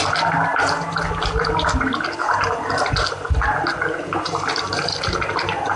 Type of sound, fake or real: real